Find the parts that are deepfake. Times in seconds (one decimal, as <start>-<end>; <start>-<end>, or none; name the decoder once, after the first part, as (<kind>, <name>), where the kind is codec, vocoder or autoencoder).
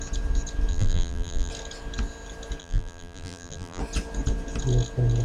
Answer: 0.7-1.5 (vocoder, BigVGAN v2); 2.6-3.8